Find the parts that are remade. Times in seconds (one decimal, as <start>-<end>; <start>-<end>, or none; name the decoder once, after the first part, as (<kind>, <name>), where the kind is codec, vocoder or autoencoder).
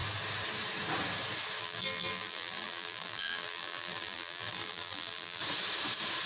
1.6-5.4 (vocoder, BigVGAN v2)